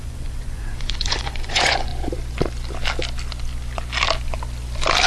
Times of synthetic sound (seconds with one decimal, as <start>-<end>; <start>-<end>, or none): 0.0-1.9